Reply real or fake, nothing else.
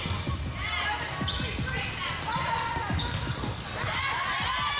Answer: real